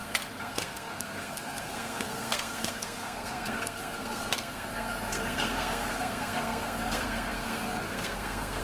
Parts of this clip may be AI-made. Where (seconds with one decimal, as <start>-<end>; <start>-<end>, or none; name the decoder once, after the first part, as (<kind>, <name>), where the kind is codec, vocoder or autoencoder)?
0.0-8.6 (codec, SNAC)